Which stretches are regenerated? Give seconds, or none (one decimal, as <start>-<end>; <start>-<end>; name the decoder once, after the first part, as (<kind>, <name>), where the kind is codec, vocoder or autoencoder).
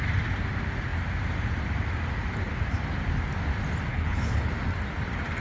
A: 3.9-4.5 (codec, HILCodec)